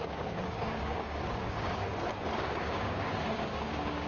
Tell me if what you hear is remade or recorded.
remade